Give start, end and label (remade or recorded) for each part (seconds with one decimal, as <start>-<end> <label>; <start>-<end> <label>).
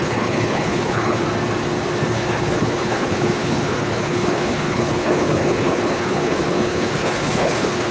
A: 0.0-1.2 remade; 1.2-2.1 recorded; 2.1-7.9 remade